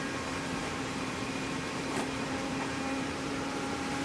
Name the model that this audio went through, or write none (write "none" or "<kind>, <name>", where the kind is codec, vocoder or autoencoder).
vocoder, BigVGAN v2